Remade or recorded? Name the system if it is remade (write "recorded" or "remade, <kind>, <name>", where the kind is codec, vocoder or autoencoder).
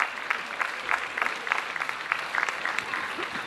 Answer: recorded